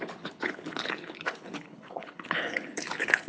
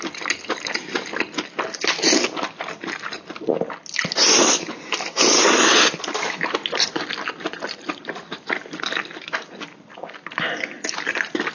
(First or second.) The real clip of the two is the second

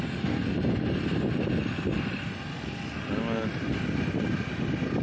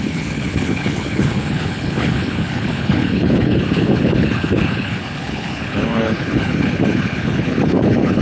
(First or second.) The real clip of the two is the first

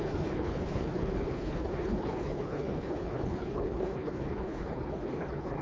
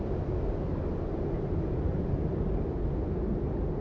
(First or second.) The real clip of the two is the second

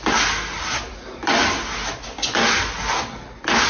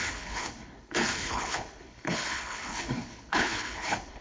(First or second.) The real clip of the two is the first